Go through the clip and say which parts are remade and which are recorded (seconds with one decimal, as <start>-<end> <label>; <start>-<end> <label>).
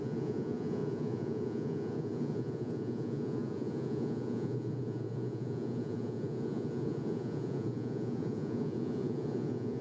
0.0-9.8 remade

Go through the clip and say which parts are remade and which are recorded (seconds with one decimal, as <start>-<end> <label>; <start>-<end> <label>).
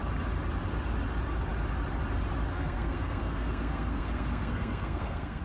0.0-2.5 recorded; 2.5-5.4 remade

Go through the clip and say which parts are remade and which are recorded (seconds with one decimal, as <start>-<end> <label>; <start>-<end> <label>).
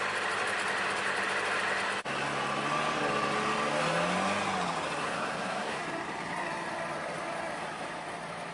0.0-5.0 recorded; 5.0-5.8 remade; 5.8-8.5 recorded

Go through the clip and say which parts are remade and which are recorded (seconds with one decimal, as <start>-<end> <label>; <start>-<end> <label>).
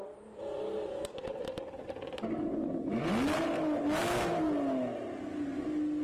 0.0-6.0 recorded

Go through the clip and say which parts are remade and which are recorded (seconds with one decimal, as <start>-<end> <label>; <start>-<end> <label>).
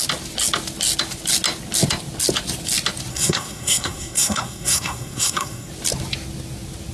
0.0-3.1 recorded; 3.1-5.7 remade; 5.7-6.9 recorded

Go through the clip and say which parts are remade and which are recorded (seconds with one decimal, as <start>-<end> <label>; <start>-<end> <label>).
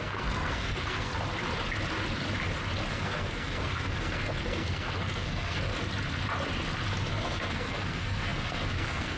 0.0-1.1 remade; 1.1-2.9 recorded; 2.9-5.7 remade; 5.7-7.1 recorded; 7.1-9.2 remade